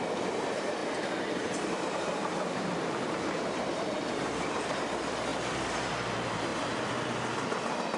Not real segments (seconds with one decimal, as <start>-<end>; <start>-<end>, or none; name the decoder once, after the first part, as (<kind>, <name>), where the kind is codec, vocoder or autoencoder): 0.0-6.5 (vocoder, BigVGAN v2)